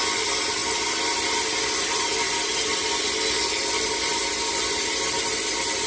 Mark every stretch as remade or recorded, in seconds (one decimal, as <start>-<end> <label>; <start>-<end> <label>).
0.0-5.9 recorded

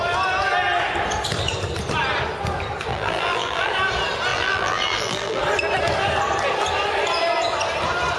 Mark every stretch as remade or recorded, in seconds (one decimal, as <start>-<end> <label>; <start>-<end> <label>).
0.0-2.9 recorded; 2.9-3.7 remade; 3.7-4.3 recorded; 4.3-5.4 remade; 5.4-8.2 recorded

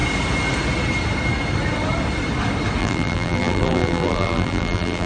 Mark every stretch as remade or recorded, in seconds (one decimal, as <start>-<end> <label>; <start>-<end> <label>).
0.0-2.8 recorded; 2.8-5.1 remade

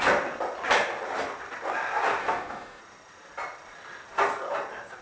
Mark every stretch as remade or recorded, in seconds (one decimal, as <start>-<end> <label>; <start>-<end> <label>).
0.0-2.2 recorded; 2.2-2.8 remade; 2.8-5.0 recorded